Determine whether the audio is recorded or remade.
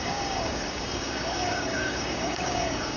remade